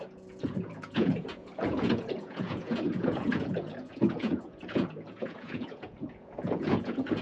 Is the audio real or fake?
fake